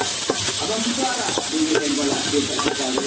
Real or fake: real